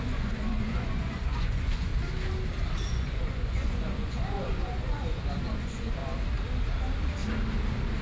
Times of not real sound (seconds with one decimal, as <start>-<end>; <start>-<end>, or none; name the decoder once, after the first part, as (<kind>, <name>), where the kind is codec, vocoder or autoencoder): 0.0-1.9 (vocoder, Vocos); 2.9-6.0